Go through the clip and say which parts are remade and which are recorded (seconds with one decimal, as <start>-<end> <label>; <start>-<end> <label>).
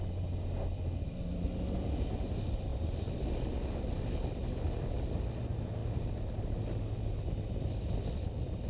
0.0-2.7 recorded; 2.7-3.8 remade; 3.8-8.7 recorded